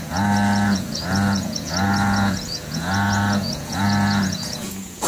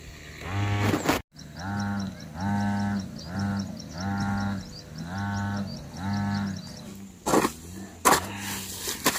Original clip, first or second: second